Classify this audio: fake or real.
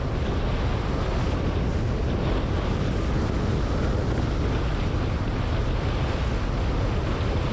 real